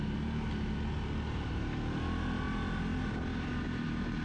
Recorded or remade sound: recorded